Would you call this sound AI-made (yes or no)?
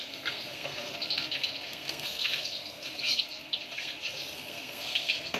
yes